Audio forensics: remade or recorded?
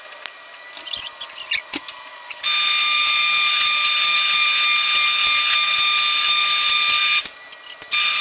recorded